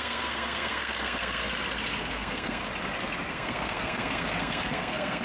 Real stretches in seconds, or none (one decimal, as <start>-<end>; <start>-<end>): 1.4-2.0; 2.6-3.3